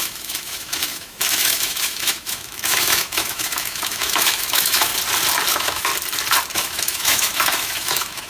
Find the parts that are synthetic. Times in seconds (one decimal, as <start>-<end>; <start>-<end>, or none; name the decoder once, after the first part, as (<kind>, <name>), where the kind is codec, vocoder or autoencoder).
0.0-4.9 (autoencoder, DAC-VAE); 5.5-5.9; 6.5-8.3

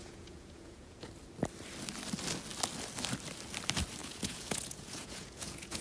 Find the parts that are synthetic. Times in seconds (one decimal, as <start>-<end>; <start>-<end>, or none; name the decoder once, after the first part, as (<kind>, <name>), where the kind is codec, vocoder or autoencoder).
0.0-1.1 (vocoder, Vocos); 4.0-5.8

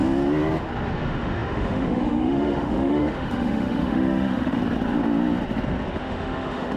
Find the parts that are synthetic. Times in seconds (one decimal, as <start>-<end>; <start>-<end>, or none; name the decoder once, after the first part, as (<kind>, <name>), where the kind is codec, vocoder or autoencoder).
0.9-4.6 (autoencoder, DAC-VAE); 6.0-6.8